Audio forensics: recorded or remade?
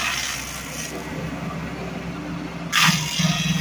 recorded